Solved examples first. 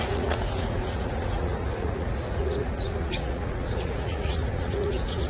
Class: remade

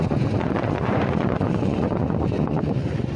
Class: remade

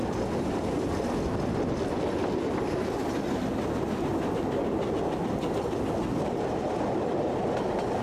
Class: recorded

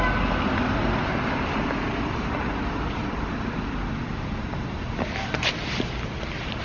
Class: recorded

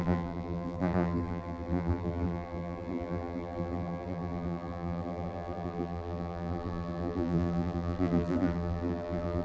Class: remade